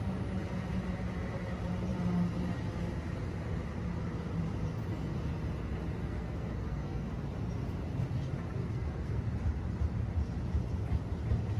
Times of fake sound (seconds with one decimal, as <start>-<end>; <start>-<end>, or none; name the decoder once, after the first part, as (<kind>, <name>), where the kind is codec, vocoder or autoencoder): 6.0-7.1 (codec, SNAC); 8.6-9.2